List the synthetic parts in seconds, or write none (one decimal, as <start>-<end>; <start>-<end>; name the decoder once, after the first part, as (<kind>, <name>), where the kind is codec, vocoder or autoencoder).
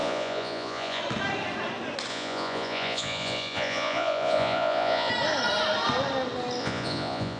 0.0-1.0 (vocoder, Vocos); 2.1-5.1; 6.6-7.4